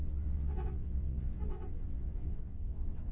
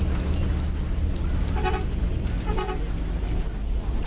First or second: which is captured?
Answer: second